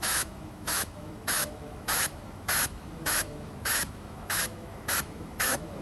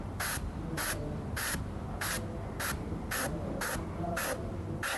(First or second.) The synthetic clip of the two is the first